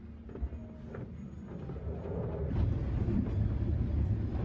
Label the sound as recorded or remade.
recorded